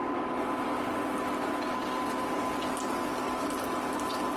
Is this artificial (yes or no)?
no